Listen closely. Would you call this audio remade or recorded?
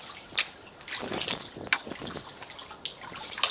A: recorded